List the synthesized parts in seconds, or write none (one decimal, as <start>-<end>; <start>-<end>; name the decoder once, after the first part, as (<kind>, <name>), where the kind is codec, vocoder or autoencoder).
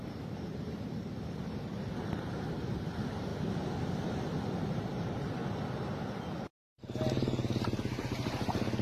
0.0-3.3 (vocoder, BigVGAN v2); 4.7-5.4; 8.0-8.8